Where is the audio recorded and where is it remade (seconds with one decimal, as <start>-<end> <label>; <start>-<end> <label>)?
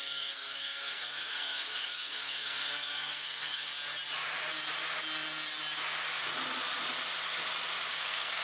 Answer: 0.0-3.7 remade; 3.7-7.9 recorded; 7.9-8.4 remade